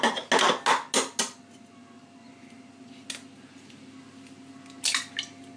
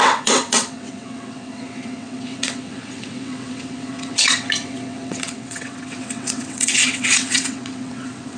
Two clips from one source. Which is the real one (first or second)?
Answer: first